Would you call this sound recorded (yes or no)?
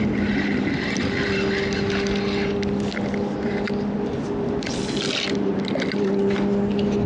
yes